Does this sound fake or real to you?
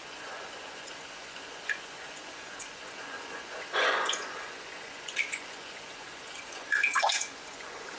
fake